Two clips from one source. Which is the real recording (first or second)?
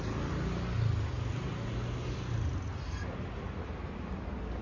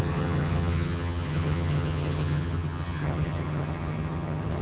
first